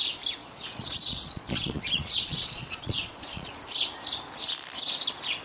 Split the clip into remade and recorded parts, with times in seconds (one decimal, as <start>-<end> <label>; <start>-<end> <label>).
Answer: 0.0-0.4 recorded; 0.4-3.6 remade; 3.6-5.4 recorded